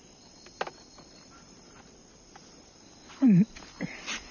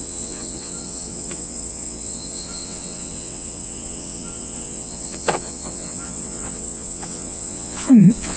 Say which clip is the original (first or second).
first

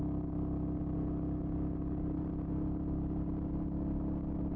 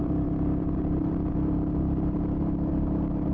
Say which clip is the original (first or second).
first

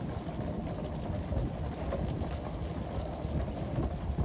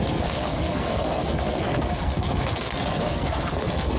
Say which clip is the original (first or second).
first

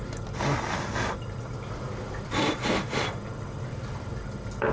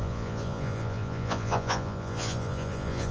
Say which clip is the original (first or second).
first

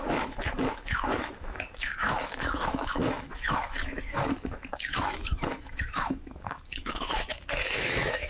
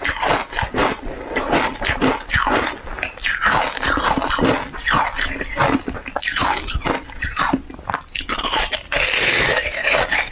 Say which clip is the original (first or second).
second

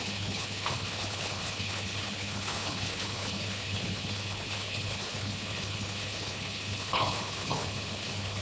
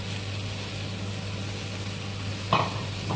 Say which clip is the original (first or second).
second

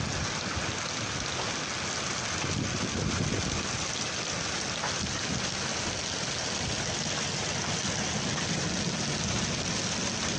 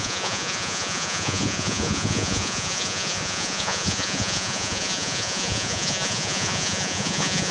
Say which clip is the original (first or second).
first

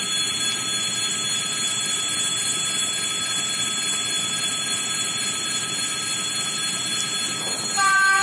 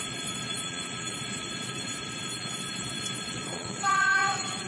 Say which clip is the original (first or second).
first